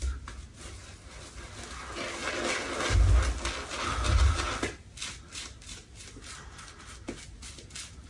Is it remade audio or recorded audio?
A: recorded